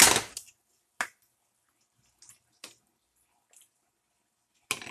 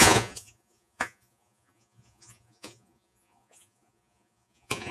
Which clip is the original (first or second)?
first